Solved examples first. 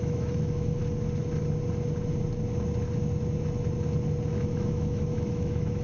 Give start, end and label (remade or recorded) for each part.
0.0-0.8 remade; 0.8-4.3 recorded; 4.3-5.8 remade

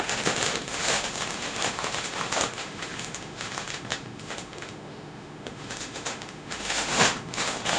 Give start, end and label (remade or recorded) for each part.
0.0-7.8 remade

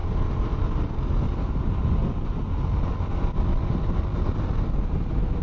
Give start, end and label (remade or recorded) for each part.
0.0-5.4 recorded

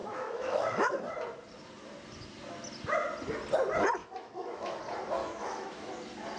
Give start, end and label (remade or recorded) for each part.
0.0-1.0 remade; 1.0-4.0 recorded; 4.0-4.8 remade; 4.8-5.2 recorded; 5.2-5.9 remade; 5.9-6.4 recorded

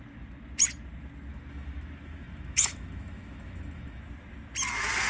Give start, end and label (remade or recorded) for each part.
0.0-1.3 recorded; 1.3-4.0 remade; 4.0-5.1 recorded

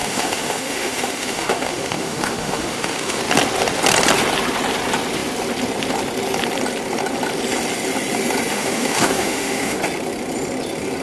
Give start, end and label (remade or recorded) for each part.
0.0-3.2 remade; 3.2-8.5 recorded; 8.5-9.8 remade; 9.8-11.0 recorded